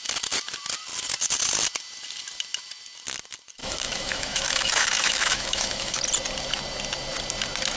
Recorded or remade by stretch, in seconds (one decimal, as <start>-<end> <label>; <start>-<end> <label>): 0.0-3.6 recorded; 3.6-6.0 remade; 6.0-7.8 recorded